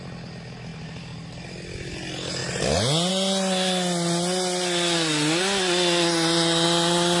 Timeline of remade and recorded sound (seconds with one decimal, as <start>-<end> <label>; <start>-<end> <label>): 0.0-7.2 recorded